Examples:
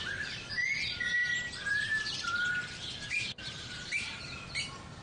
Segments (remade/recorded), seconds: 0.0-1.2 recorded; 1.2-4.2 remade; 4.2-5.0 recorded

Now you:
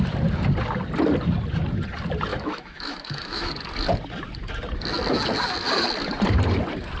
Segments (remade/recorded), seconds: 0.0-2.3 recorded; 2.3-3.5 remade; 3.5-7.0 recorded